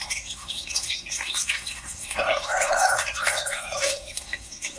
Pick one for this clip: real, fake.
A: fake